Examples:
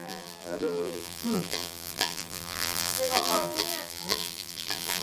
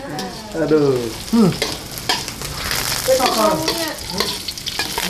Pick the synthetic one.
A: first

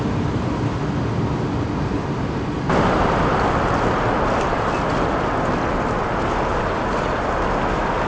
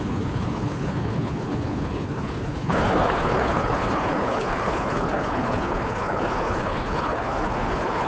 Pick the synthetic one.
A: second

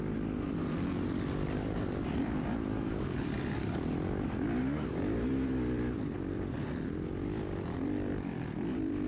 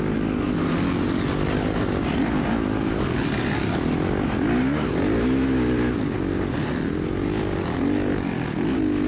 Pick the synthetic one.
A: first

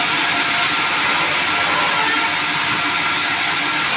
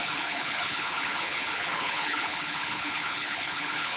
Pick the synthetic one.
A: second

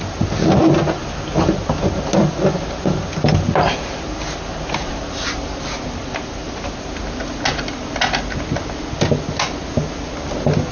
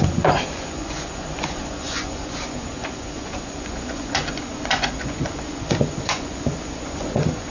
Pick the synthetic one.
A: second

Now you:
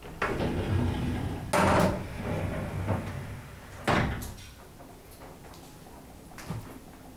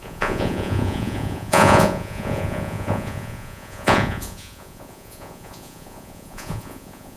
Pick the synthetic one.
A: second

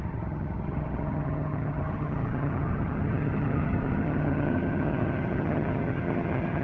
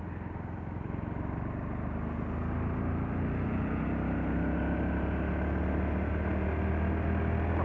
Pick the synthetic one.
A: first